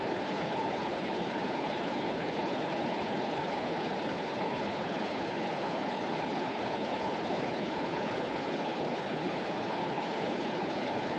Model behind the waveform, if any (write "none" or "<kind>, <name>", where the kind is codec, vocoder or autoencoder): codec, HILCodec